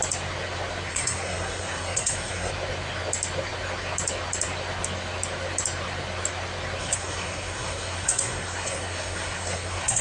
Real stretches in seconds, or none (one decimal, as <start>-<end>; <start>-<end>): 0.0-0.9; 2.5-6.8